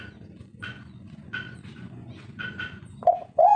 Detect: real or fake fake